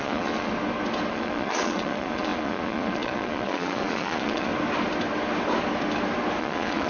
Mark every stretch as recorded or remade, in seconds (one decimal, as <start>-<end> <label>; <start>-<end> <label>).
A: 0.0-0.5 remade; 0.5-1.1 recorded; 1.1-4.5 remade; 4.5-6.4 recorded; 6.4-6.9 remade